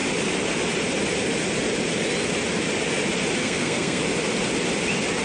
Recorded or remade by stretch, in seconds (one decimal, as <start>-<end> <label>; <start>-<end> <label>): 0.0-3.4 recorded; 3.4-4.0 remade; 4.0-5.2 recorded